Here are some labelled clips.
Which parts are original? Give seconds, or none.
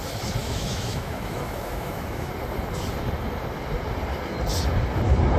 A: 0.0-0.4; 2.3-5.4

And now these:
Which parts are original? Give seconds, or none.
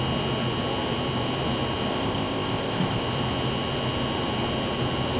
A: 0.0-1.9; 3.0-5.2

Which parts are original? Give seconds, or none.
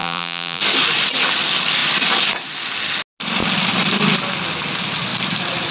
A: 0.6-5.7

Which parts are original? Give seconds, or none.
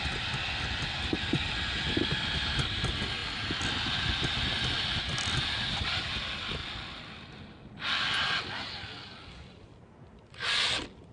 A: 0.0-11.1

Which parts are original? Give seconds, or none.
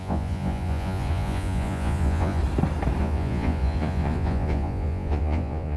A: 2.4-3.0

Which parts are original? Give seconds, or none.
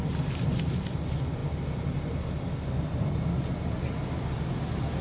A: 0.0-5.0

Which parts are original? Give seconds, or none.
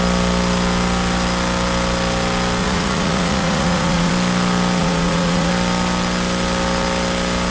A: 0.0-2.6; 4.1-4.8; 5.5-7.5